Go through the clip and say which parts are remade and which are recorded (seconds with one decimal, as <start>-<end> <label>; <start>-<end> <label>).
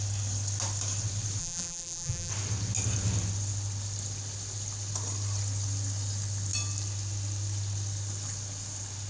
0.0-1.4 recorded; 1.4-2.3 remade; 2.3-9.1 recorded